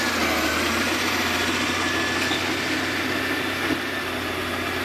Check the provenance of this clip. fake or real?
real